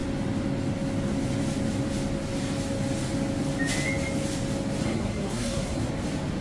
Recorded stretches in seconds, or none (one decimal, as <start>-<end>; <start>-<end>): 0.0-4.8; 5.9-6.4

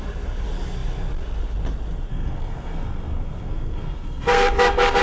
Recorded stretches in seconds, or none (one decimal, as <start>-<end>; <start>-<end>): 0.0-2.1

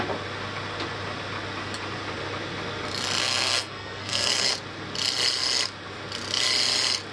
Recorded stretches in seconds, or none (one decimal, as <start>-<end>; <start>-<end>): 0.0-3.2; 4.5-7.1

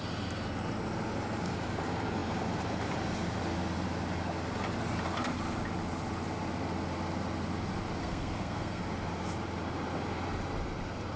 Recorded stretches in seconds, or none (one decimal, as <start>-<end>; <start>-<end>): 0.0-8.0; 8.8-11.2

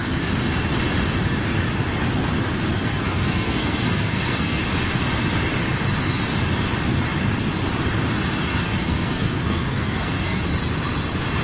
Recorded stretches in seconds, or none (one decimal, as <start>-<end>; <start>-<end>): 0.0-2.7; 4.6-8.6; 10.4-11.4